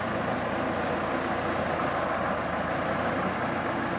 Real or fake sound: real